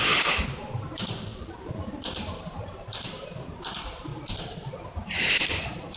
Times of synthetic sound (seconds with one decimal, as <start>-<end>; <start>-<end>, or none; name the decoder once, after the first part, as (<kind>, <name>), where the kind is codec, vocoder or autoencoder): 0.0-1.3 (vocoder, BigVGAN v2); 2.0-4.1; 4.7-6.0